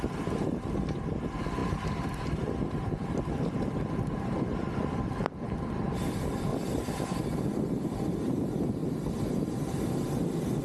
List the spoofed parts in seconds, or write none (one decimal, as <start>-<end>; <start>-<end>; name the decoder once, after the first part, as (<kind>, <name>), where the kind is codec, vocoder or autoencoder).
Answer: 1.6-6.0 (vocoder, BigVGAN v2); 6.5-7.2